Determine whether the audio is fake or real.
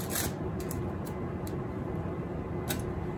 real